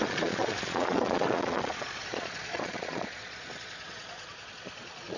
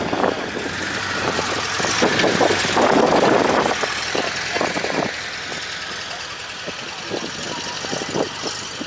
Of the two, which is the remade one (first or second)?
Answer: first